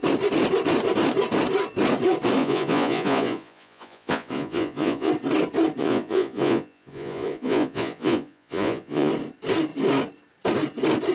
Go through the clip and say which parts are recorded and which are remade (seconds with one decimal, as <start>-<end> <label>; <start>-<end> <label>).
0.0-2.4 recorded; 2.4-5.1 remade; 5.1-5.8 recorded; 5.8-9.1 remade; 9.1-11.1 recorded